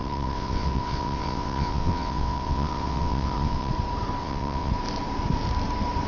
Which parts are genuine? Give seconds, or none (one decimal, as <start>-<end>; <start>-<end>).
3.7-4.2; 4.7-6.1